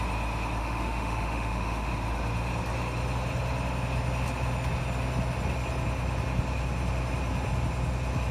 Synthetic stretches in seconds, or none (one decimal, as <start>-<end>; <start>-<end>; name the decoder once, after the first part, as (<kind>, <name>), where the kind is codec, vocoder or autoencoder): 0.6-1.9 (autoencoder, DAC-VAE)